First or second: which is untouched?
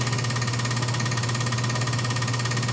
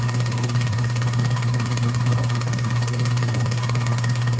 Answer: first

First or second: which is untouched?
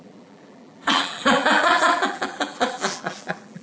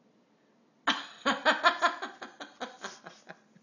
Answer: second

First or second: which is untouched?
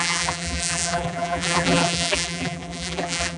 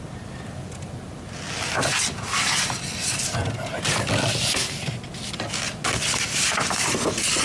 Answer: second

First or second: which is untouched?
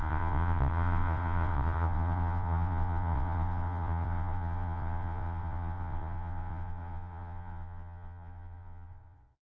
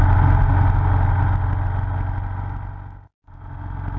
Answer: second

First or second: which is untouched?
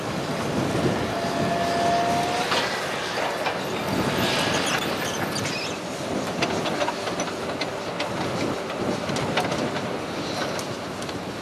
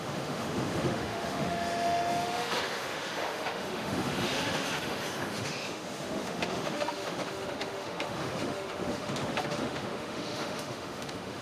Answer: first